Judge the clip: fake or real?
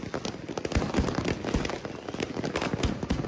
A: real